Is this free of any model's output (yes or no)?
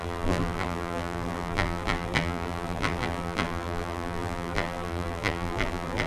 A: no